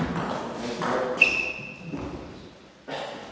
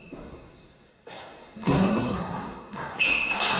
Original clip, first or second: first